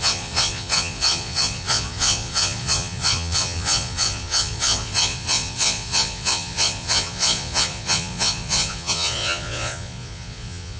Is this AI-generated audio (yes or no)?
yes